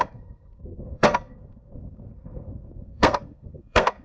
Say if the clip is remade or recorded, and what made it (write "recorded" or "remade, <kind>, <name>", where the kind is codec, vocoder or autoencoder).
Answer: remade, codec, SNAC